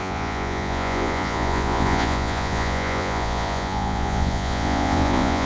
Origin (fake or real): fake